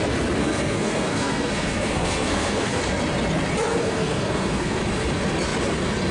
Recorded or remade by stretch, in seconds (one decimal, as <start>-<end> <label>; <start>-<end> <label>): 0.0-0.4 recorded; 0.4-2.8 remade; 2.8-3.7 recorded; 3.7-4.8 remade; 4.8-6.1 recorded